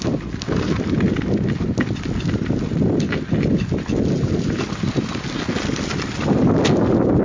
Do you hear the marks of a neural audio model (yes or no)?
no